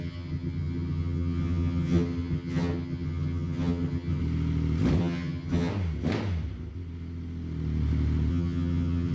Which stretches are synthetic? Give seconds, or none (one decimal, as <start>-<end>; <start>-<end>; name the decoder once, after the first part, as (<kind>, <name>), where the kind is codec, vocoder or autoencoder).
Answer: 0.0-4.2 (vocoder, HiFi-GAN); 5.0-5.7; 8.3-9.1